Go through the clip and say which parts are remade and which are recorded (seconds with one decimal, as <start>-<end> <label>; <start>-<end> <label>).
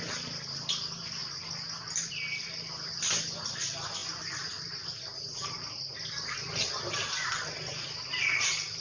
0.0-8.8 recorded